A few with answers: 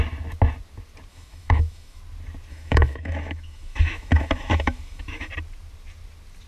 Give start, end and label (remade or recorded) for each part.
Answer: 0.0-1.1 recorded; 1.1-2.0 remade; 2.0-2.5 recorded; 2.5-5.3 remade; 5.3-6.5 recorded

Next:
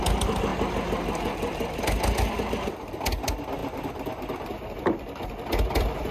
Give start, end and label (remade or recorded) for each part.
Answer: 0.0-6.1 recorded

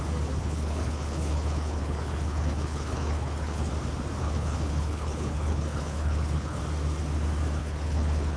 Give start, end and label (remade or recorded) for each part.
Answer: 0.0-0.4 recorded; 0.4-3.7 remade; 3.7-4.2 recorded; 4.2-6.6 remade; 6.6-7.6 recorded; 7.6-8.4 remade

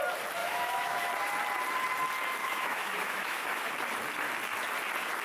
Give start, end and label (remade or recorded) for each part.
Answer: 0.0-0.4 recorded; 0.4-1.1 remade; 1.1-2.4 recorded; 2.4-3.7 remade; 3.7-5.2 recorded

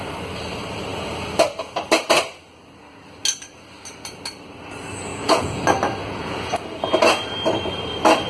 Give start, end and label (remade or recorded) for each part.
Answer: 0.0-5.1 recorded; 5.1-5.6 remade; 5.6-6.0 recorded; 6.0-6.5 remade; 6.5-8.3 recorded

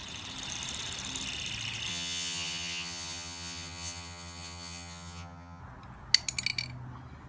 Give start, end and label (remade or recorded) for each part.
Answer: 0.0-1.9 recorded; 1.9-5.6 remade; 5.6-7.3 recorded